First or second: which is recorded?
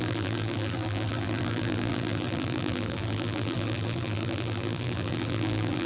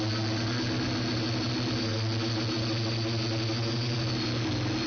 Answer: second